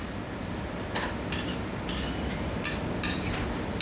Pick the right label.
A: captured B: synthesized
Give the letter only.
A